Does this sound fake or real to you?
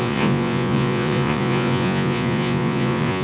fake